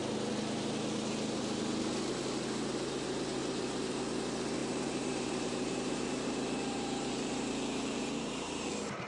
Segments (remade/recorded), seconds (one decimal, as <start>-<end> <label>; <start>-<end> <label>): 0.0-3.4 recorded; 3.4-4.0 remade; 4.0-4.6 recorded; 4.6-8.7 remade; 8.7-9.1 recorded